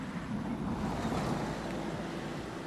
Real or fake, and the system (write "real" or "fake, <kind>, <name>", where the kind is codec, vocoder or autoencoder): real